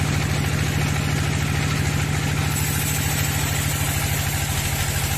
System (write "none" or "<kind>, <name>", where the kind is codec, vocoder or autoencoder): none